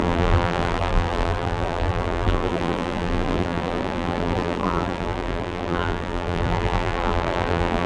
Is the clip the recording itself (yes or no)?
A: no